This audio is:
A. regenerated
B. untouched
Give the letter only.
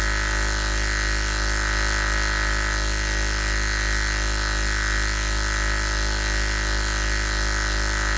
B